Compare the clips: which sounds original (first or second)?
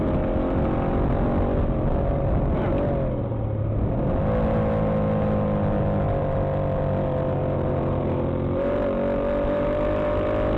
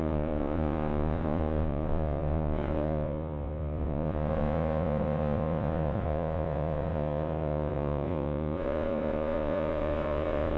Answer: first